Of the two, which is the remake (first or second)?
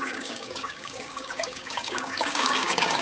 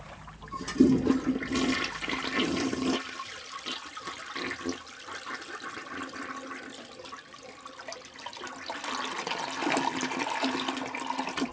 first